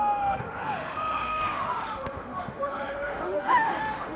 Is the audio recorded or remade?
remade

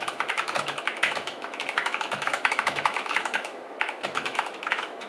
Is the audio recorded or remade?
remade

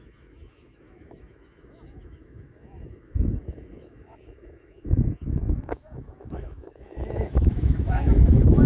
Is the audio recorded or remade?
remade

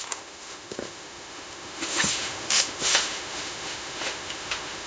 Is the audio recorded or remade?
remade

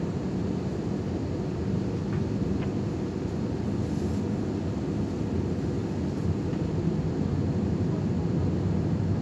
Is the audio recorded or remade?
recorded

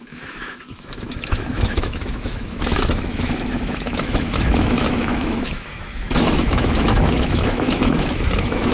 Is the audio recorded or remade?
remade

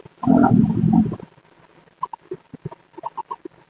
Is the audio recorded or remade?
recorded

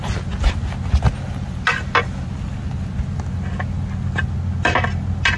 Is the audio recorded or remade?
recorded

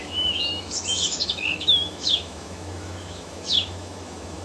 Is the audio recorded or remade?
remade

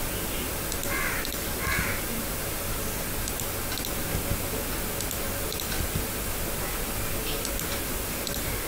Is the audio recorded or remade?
recorded